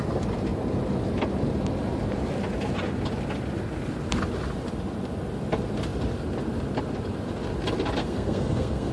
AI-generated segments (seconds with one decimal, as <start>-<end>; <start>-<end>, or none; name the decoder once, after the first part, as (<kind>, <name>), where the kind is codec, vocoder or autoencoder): 8.0-8.9 (codec, SNAC)

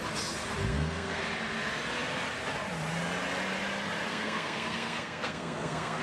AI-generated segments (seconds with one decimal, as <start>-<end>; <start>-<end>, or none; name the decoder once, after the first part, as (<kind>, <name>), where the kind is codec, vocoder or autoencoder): 0.7-1.2 (codec, SNAC); 4.1-6.0